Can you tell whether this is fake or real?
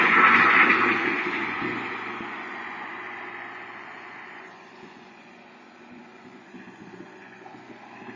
fake